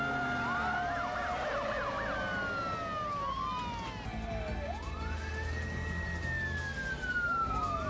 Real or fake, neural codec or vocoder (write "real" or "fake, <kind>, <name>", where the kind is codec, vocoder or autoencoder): real